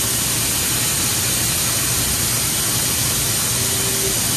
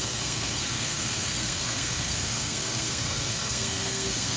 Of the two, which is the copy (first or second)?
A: second